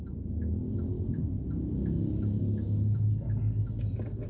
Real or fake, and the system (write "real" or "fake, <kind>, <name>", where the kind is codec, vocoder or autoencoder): real